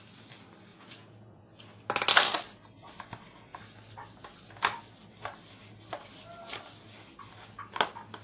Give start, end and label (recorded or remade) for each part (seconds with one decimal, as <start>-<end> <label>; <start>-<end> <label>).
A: 0.0-0.7 recorded; 0.7-1.4 remade; 1.4-8.2 recorded